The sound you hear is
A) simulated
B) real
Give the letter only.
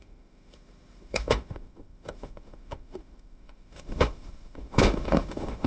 A